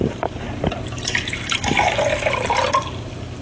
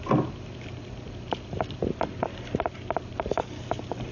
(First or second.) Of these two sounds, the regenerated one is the first